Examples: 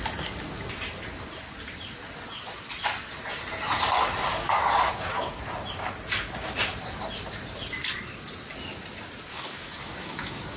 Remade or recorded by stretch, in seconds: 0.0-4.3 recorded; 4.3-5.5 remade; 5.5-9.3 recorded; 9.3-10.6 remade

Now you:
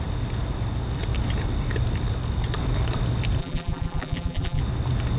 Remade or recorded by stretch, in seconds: 0.0-3.4 recorded; 3.4-4.6 remade; 4.6-5.2 recorded